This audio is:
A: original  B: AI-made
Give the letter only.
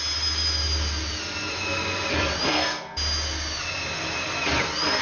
A